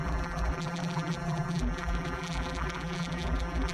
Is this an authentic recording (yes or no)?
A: no